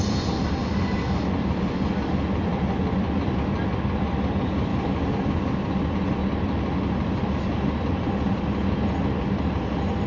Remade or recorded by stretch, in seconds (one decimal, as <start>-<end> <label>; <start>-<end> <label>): 0.0-0.6 remade; 0.6-2.2 recorded; 2.2-4.7 remade; 4.7-5.8 recorded; 5.8-6.2 remade; 6.2-9.0 recorded; 9.0-10.1 remade